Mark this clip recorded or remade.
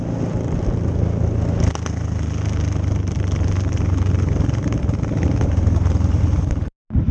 recorded